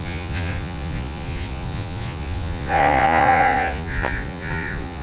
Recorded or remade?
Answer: remade